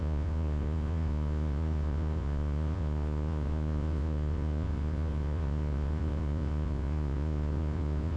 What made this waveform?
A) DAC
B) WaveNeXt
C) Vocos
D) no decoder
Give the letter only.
C